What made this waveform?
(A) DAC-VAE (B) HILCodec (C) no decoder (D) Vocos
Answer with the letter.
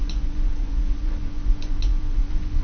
D